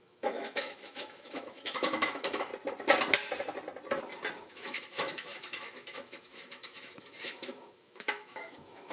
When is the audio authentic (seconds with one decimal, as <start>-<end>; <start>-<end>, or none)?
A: 2.5-4.4